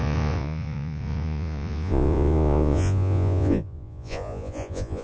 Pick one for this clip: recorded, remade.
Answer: remade